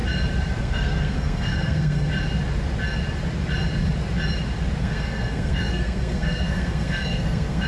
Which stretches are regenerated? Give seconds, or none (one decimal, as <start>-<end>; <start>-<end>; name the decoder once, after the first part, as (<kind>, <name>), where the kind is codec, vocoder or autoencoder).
0.6-2.1 (codec, SNAC); 4.8-7.7